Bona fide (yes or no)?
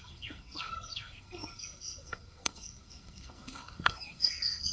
no